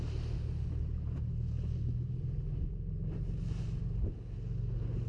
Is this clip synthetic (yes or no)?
no